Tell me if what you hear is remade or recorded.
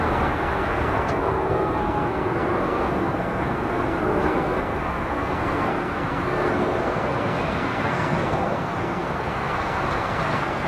remade